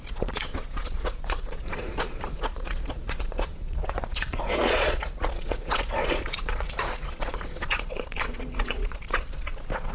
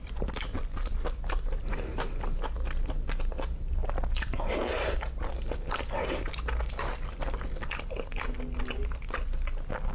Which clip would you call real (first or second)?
second